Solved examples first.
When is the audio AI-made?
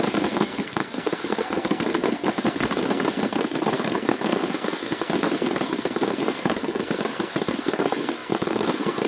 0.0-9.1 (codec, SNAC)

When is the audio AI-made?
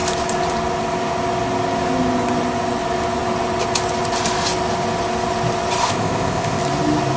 5.8-6.6 (codec, ZipCodec)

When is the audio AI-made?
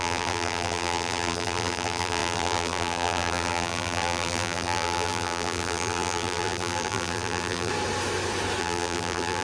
0.0-7.7 (vocoder, BigVGAN v2); 8.6-9.4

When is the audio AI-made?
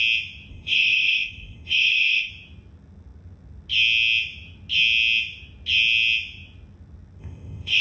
0.5-2.3 (codec, ZipCodec); 7.2-7.8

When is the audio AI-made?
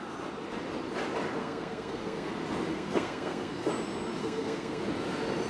1.4-2.3 (codec, SNAC); 2.7-3.7; 4.2-4.8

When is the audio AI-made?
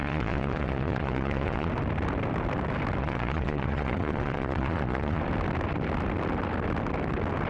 0.0-1.7 (vocoder, Vocos); 3.0-5.2